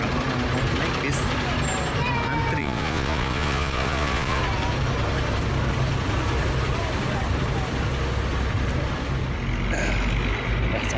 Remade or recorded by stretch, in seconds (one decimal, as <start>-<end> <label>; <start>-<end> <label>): 0.0-2.6 recorded; 2.6-4.4 remade; 4.4-11.0 recorded